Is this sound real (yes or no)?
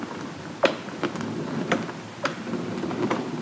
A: yes